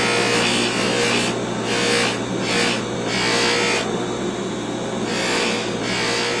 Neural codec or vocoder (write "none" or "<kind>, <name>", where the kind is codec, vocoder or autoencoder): none